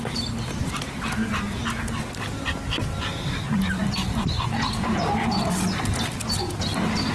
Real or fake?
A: real